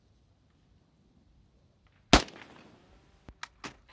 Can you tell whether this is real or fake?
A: real